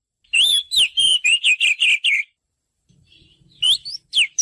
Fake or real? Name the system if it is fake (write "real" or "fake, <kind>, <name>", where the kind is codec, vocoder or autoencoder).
real